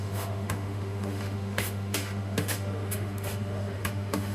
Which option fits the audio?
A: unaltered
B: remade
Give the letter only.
B